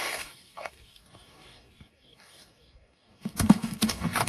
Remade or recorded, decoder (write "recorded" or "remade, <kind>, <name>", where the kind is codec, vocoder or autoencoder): remade, codec, DAC